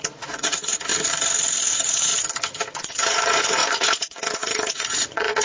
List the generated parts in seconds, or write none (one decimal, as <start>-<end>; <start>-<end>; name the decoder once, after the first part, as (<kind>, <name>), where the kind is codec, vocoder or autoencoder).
0.0-0.9 (vocoder, Vocos); 1.7-2.1; 2.9-5.4